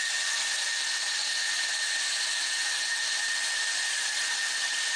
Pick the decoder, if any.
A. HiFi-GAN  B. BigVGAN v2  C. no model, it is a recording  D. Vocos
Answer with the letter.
C